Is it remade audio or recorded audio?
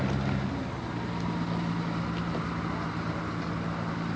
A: recorded